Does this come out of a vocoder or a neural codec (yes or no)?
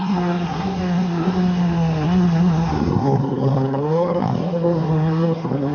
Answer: yes